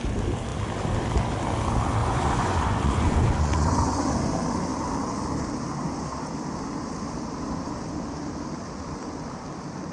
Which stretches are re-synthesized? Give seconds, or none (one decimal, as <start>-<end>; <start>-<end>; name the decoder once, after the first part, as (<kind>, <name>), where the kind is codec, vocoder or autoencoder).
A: 2.0-4.1 (vocoder, Vocos)